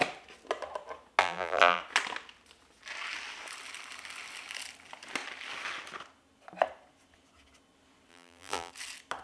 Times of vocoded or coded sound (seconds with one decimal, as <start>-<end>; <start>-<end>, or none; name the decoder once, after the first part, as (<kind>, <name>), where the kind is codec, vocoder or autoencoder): 1.2-1.8 (vocoder, BigVGAN v2); 8.1-8.7